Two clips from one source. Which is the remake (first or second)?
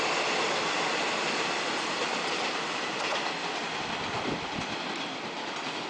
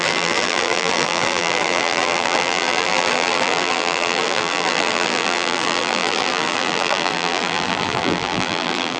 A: second